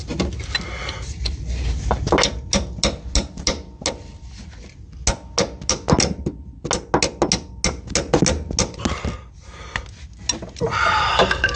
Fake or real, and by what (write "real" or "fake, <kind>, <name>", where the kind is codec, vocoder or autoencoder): real